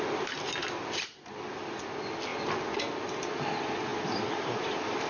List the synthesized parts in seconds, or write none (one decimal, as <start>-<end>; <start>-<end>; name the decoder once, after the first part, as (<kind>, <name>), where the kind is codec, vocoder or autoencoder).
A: 2.3-2.8 (vocoder, BigVGAN v2); 3.9-5.1